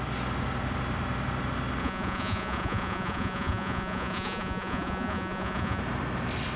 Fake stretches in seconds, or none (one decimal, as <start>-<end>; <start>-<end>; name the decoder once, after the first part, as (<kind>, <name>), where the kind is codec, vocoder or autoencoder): 1.8-5.8 (vocoder, Vocos)